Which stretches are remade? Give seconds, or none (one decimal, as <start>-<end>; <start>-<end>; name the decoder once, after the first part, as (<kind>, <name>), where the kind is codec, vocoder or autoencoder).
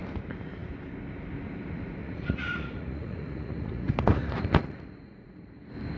2.0-5.6 (vocoder, Vocos)